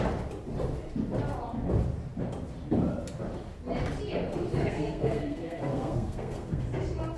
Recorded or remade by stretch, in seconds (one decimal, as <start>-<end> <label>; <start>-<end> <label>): 0.0-4.6 recorded; 4.6-6.6 remade; 6.6-7.2 recorded